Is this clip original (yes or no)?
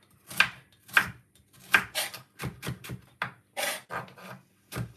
yes